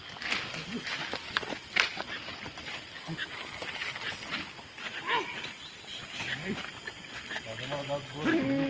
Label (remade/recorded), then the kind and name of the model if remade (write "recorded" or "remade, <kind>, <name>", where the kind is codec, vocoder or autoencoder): recorded